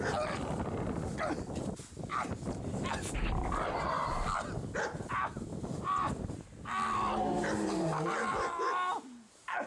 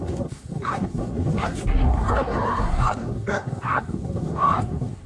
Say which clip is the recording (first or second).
first